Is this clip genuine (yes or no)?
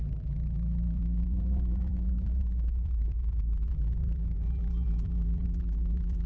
no